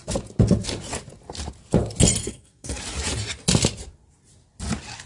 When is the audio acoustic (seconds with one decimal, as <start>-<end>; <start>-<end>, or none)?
0.0-2.2; 2.8-5.1